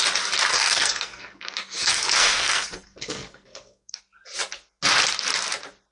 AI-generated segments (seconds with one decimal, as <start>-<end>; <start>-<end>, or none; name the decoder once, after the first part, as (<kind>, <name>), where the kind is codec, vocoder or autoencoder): 0.5-4.0 (codec, SNAC)